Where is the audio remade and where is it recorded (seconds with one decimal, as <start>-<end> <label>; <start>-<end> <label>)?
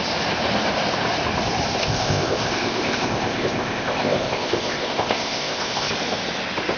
0.0-1.8 recorded; 1.8-5.9 remade; 5.9-6.8 recorded